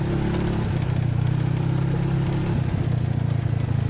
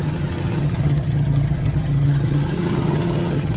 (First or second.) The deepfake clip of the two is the second